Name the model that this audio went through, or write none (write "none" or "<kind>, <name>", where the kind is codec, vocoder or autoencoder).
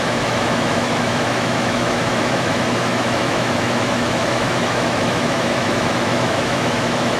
autoencoder, DAC-VAE